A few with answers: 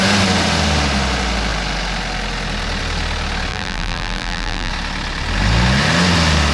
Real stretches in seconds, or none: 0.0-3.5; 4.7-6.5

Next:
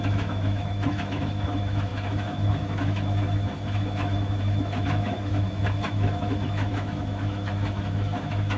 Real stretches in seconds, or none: none

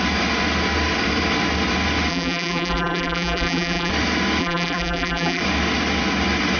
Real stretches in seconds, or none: 0.0-2.1; 3.9-4.4; 5.4-6.6

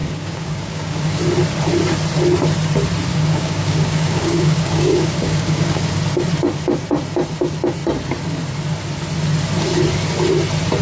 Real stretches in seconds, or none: 1.2-3.1; 5.9-10.8

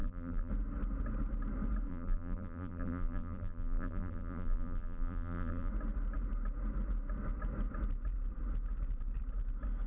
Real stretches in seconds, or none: 0.5-1.9; 5.7-9.9

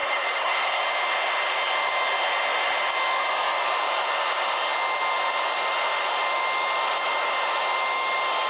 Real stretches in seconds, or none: 0.8-8.5

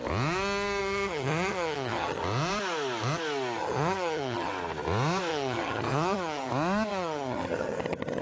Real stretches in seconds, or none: 0.0-0.8; 2.2-3.6; 4.5-5.3; 6.5-6.9

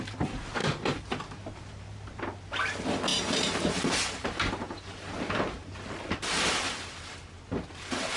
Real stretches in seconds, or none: 0.0-0.6; 2.5-3.1; 3.9-8.2